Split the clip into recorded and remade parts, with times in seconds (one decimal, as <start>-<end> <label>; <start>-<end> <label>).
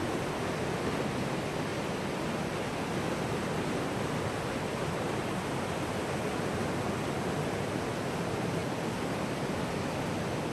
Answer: 0.0-10.5 recorded